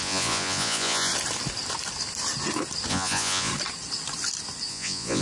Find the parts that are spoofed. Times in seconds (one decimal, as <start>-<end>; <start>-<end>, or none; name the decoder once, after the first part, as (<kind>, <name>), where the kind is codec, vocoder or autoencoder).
0.0-1.1 (vocoder, Vocos); 2.9-3.5; 4.7-5.2